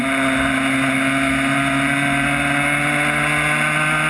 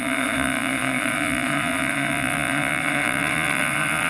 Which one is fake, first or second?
second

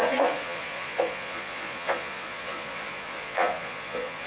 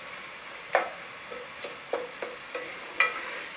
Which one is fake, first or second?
first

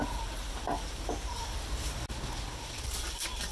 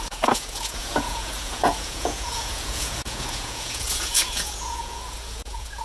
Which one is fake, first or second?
second